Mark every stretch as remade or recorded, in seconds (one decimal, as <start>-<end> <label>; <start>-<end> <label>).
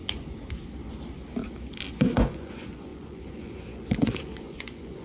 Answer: 0.0-2.0 recorded; 2.0-5.0 remade